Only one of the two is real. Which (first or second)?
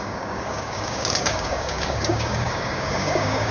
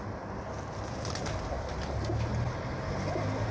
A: second